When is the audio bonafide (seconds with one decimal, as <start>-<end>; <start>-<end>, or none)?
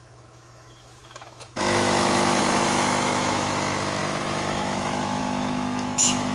none